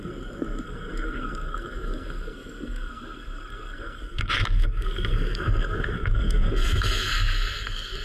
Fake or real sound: fake